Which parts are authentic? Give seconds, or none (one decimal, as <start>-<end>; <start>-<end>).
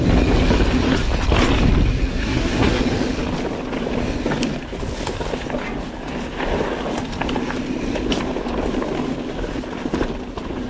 0.0-2.1; 2.8-10.7